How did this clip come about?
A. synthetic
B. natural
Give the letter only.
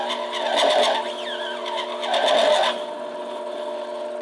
B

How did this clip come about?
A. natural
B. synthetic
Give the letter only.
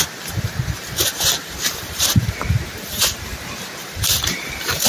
B